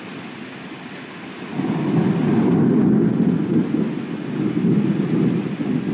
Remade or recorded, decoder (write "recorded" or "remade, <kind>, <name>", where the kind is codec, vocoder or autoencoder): recorded